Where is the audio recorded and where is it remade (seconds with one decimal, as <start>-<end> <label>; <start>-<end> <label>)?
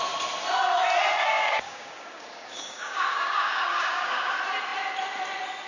0.0-1.2 recorded; 1.2-4.3 remade; 4.3-5.7 recorded